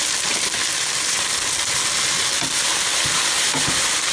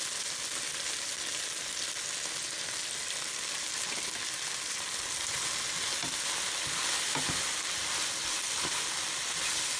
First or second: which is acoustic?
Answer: second